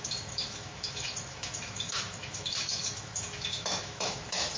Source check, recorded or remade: remade